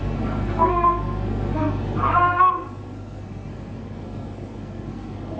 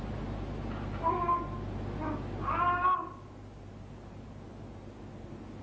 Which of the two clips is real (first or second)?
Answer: second